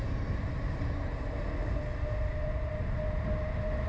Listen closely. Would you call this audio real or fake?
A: real